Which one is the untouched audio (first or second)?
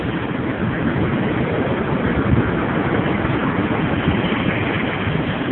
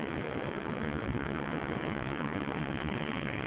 first